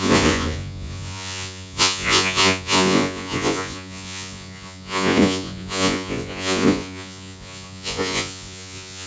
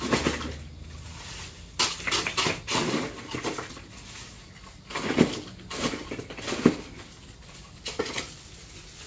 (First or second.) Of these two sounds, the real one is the second